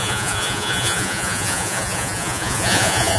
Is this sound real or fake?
fake